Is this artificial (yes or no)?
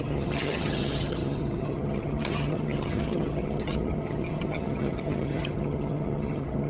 yes